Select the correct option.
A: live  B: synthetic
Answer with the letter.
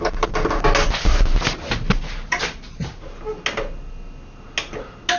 A